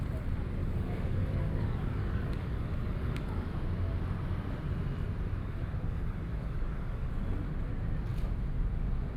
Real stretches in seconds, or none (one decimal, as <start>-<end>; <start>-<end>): 0.0-0.6; 3.5-5.4; 7.1-9.2